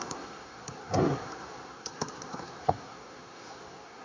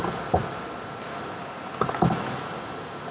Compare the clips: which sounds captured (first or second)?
second